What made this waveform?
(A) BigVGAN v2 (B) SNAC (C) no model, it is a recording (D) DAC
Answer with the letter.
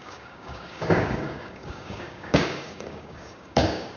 D